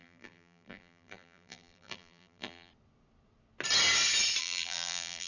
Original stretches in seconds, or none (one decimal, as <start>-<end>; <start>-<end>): 2.7-4.4